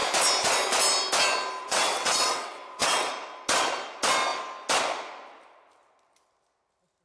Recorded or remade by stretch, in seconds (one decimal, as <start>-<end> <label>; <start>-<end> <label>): 0.0-1.6 recorded; 1.6-3.1 remade; 3.1-7.0 recorded